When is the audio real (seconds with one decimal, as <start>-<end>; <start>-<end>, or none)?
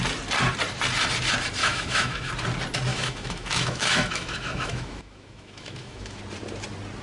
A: 0.0-1.6; 2.3-2.9; 6.2-7.0